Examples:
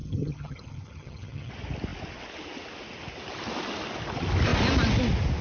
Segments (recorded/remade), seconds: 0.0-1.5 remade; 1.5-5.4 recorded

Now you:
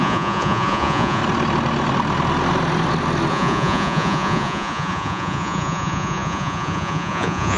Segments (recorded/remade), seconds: 0.0-1.2 remade; 1.2-3.3 recorded; 3.3-7.6 remade